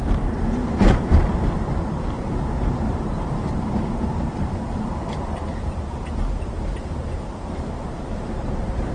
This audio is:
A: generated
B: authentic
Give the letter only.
A